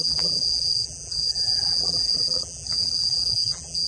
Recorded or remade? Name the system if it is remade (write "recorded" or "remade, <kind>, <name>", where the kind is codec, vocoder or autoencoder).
remade, vocoder, BigVGAN v2